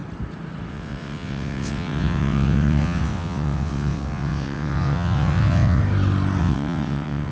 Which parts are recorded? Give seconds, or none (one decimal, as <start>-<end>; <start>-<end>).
0.0-0.7; 5.8-6.4